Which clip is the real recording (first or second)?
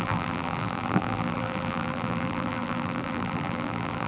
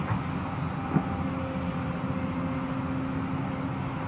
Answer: second